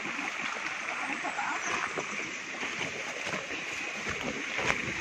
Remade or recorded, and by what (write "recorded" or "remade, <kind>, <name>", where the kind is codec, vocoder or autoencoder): recorded